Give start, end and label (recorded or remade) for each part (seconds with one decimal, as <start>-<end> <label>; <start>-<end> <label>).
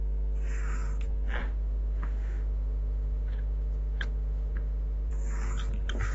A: 0.0-1.4 recorded; 1.4-5.1 remade; 5.1-6.1 recorded